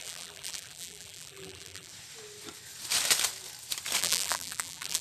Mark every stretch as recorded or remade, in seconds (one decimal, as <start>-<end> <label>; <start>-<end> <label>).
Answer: 0.0-1.9 remade; 1.9-4.0 recorded; 4.0-5.0 remade